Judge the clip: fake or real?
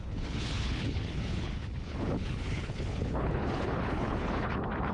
fake